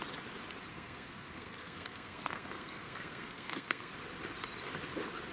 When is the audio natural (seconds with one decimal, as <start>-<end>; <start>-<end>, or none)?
0.0-0.7; 3.9-5.3